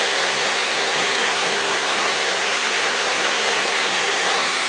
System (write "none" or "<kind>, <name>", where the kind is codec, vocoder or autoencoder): codec, SNAC